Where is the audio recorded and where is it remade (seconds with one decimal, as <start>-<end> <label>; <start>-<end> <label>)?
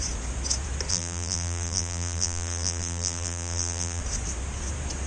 0.0-0.9 recorded; 0.9-4.0 remade; 4.0-5.1 recorded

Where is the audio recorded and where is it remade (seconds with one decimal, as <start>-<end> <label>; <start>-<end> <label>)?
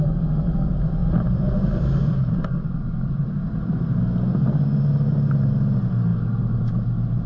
0.0-1.0 recorded; 1.0-4.0 remade; 4.0-7.3 recorded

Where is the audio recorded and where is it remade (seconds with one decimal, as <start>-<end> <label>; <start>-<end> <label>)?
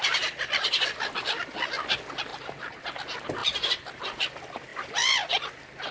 0.0-3.4 recorded; 3.4-4.2 remade; 4.2-4.7 recorded; 4.7-5.9 remade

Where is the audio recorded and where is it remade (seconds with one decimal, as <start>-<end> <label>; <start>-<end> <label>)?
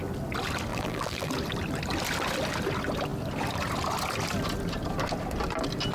0.0-0.7 recorded; 0.7-1.3 remade; 1.3-5.9 recorded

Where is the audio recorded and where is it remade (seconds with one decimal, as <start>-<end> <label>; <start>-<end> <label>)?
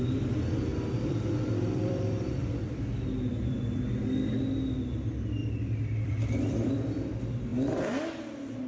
0.0-0.7 recorded; 0.7-3.8 remade; 3.8-5.4 recorded; 5.4-6.7 remade; 6.7-8.7 recorded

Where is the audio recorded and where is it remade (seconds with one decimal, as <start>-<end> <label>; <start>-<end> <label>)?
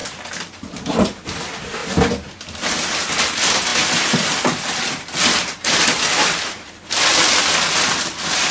0.0-0.9 remade; 0.9-3.7 recorded; 3.7-7.7 remade; 7.7-8.5 recorded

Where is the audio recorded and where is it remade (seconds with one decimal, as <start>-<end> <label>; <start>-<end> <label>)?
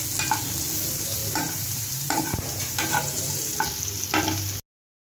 0.0-1.2 recorded; 1.2-3.5 remade; 3.5-5.1 recorded